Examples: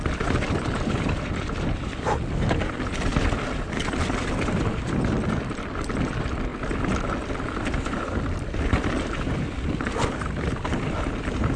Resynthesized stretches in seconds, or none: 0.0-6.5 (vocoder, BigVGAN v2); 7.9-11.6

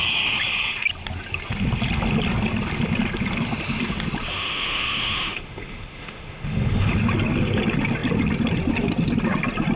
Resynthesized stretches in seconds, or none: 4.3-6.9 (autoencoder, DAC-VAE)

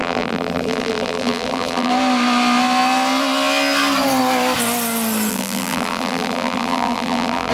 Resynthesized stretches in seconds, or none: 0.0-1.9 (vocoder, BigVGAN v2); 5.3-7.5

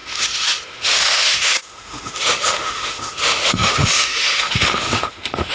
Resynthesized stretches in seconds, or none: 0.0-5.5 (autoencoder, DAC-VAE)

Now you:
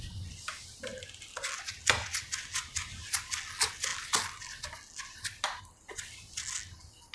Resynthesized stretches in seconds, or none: none